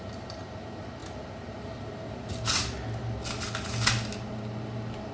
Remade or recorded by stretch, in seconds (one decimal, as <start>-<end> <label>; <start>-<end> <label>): 0.0-5.1 recorded